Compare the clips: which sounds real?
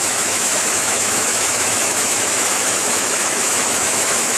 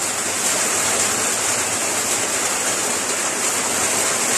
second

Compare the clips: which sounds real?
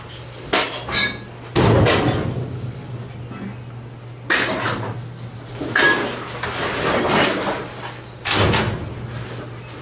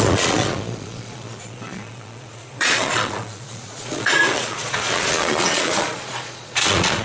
first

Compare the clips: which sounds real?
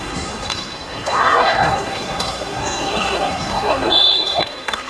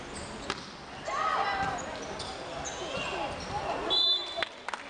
second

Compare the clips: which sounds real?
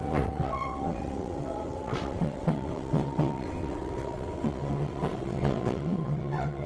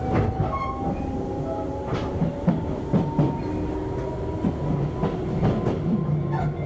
second